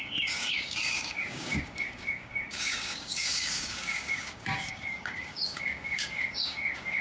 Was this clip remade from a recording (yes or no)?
yes